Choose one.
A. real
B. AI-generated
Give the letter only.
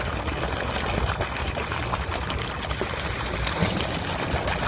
A